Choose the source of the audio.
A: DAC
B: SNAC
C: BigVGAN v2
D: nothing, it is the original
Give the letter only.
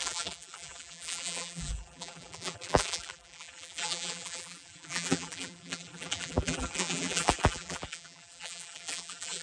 C